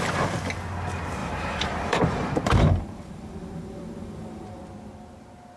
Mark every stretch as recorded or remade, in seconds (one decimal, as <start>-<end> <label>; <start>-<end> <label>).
0.0-1.2 recorded; 1.2-4.6 remade; 4.6-5.6 recorded